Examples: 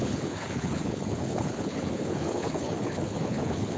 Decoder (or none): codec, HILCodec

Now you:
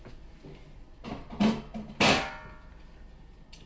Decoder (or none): none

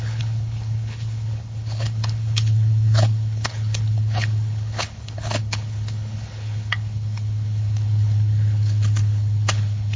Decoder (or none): codec, HILCodec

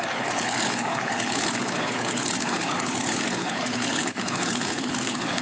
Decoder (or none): codec, HILCodec